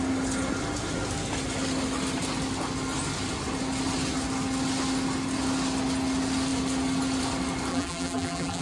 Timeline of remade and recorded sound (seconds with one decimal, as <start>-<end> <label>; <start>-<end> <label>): 0.0-7.7 recorded; 7.7-8.6 remade